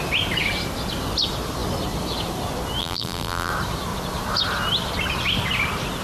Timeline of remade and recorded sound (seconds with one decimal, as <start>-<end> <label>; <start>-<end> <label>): 0.0-2.8 recorded; 2.8-3.5 remade; 3.5-6.0 recorded